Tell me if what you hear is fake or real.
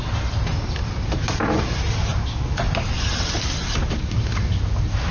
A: real